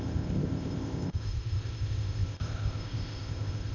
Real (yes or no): no